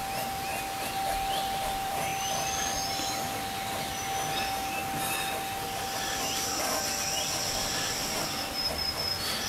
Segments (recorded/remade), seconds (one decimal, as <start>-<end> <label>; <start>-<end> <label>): 0.0-0.5 remade; 0.5-1.3 recorded; 1.3-2.1 remade; 2.1-3.8 recorded; 3.8-4.8 remade; 4.8-7.7 recorded; 7.7-9.5 remade